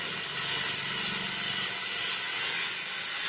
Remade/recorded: recorded